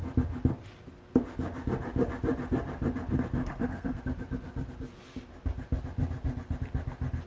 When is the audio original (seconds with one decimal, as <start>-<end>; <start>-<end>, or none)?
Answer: 0.0-3.4; 4.0-7.3